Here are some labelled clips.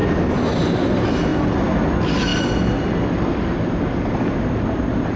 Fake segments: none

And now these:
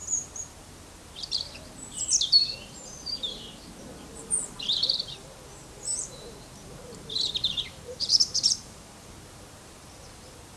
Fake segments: 0.0-10.6 (vocoder, BigVGAN v2)

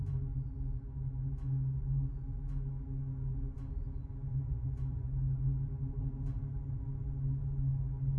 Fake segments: 4.3-5.2 (vocoder, Vocos)

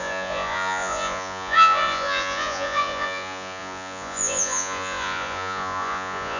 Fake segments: 0.0-6.4 (vocoder, Vocos)

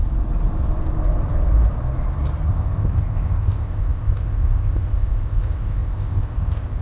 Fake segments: 2.5-6.8 (codec, ZipCodec)

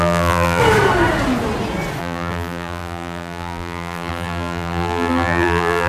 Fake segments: 0.0-0.6 (vocoder, BigVGAN v2); 2.0-5.9

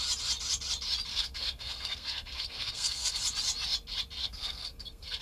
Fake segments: 1.1-3.2 (codec, SNAC); 4.2-5.2